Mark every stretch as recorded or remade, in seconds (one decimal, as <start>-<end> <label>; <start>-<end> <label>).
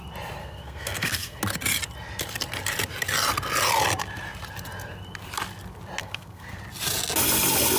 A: 0.0-0.4 recorded; 0.4-1.4 remade; 1.4-6.0 recorded; 6.0-6.6 remade; 6.6-7.8 recorded